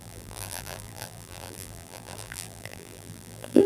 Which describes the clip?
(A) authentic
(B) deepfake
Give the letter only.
B